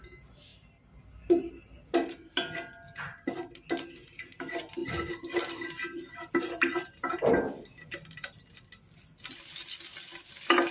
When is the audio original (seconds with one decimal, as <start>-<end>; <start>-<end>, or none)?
0.0-10.7